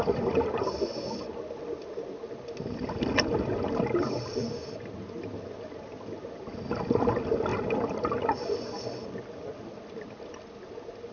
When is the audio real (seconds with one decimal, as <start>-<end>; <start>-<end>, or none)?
0.0-11.1